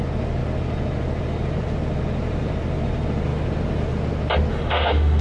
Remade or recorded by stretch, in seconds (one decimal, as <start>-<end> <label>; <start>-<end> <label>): 0.0-4.5 recorded; 4.5-5.2 remade